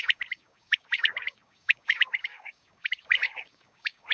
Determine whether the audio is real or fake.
fake